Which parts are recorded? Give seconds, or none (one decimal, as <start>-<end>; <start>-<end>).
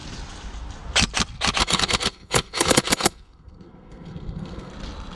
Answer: 0.0-1.6; 4.7-5.2